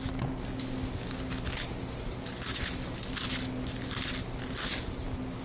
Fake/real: real